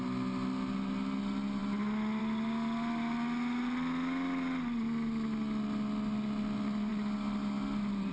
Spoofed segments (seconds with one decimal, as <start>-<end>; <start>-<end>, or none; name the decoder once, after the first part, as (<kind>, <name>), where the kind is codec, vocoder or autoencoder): none